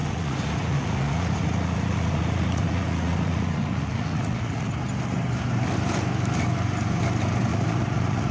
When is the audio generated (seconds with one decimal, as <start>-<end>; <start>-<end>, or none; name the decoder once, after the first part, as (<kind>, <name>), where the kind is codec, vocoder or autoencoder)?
0.0-4.7 (vocoder, Vocos); 7.5-8.3